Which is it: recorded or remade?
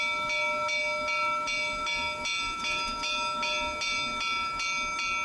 recorded